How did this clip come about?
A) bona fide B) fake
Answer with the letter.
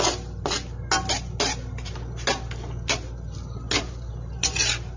A